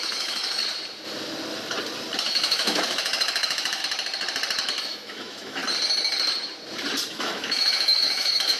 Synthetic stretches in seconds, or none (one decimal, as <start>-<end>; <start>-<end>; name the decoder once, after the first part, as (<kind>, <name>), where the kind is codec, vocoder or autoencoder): 0.0-0.6 (autoencoder, DAC-VAE); 2.2-3.8; 4.8-5.6; 7.1-8.6